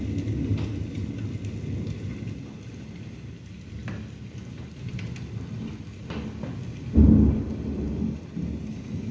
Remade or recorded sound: recorded